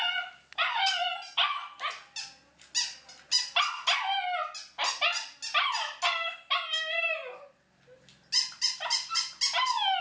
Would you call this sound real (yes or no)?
yes